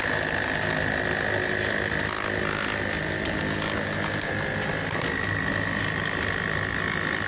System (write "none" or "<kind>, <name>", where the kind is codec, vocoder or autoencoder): none